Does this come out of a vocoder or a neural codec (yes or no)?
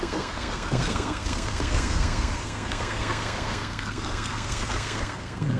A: yes